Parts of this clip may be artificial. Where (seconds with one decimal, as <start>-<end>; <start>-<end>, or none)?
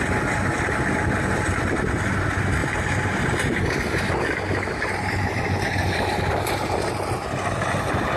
none